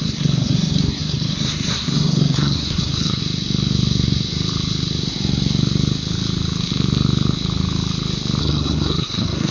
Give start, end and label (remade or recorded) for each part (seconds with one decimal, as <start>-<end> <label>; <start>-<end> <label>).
0.0-3.2 remade; 3.2-8.4 recorded; 8.4-9.5 remade